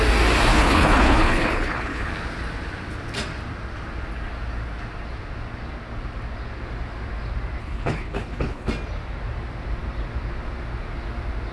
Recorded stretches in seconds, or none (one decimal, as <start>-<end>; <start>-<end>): 0.0-0.5; 2.1-7.6; 8.7-11.5